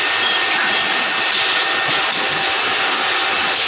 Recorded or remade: recorded